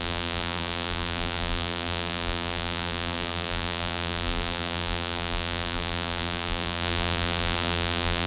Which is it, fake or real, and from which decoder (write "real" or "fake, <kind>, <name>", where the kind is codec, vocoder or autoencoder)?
fake, vocoder, BigVGAN v2